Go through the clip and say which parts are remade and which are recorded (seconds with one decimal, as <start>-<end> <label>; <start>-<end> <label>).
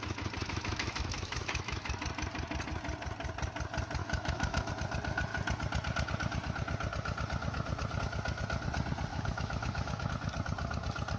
0.0-0.4 recorded; 0.4-2.0 remade; 2.0-4.0 recorded; 4.0-4.7 remade; 4.7-9.1 recorded; 9.1-10.1 remade; 10.1-11.2 recorded